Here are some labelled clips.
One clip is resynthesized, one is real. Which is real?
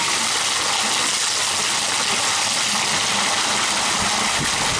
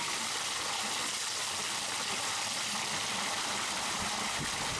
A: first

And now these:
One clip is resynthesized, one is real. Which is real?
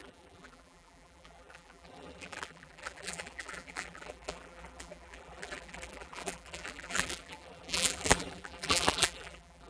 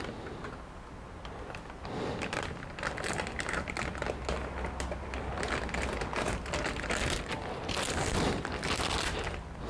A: second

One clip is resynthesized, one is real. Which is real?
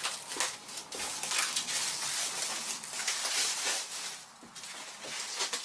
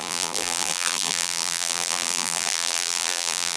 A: first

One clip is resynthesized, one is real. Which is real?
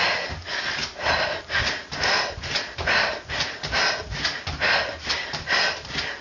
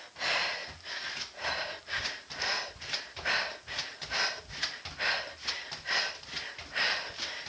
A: first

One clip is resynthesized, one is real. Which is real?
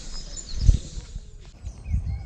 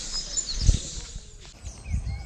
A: second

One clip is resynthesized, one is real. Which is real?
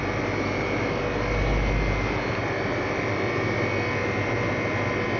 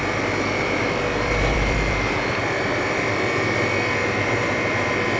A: first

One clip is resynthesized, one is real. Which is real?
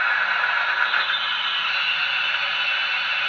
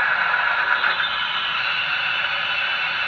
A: first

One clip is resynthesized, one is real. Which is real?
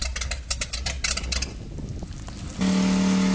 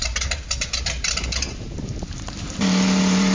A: first